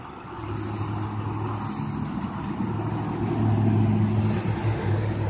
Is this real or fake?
real